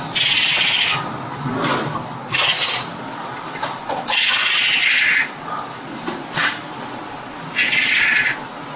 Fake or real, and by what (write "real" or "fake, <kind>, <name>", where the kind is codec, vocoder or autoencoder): real